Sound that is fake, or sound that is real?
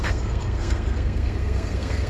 fake